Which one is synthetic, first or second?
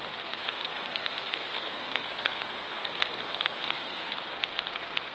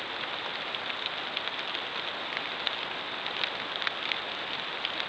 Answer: first